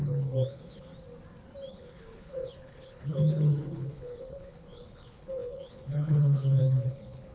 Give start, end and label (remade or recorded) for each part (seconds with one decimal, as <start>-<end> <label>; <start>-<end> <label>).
0.0-0.9 remade; 0.9-1.7 recorded; 1.7-7.3 remade